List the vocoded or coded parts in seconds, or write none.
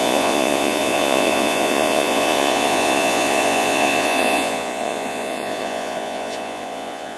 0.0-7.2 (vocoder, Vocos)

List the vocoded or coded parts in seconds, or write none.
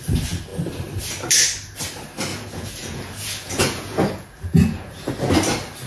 2.3-5.1 (vocoder, Vocos)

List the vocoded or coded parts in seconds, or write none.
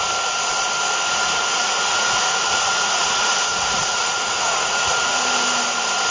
1.5-5.2 (vocoder, Vocos)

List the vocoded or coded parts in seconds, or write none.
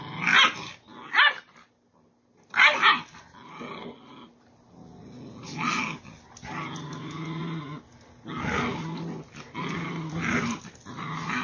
none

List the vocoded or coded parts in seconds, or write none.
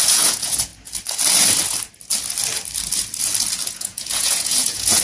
0.0-0.7 (vocoder, Vocos); 3.7-5.0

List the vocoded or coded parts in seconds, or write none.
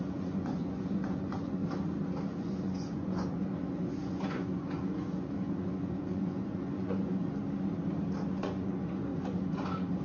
0.0-1.6 (vocoder, Vocos); 2.3-7.2; 8.3-10.0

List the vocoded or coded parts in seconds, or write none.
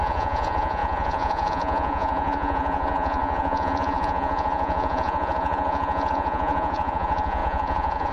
0.0-8.1 (vocoder, Vocos)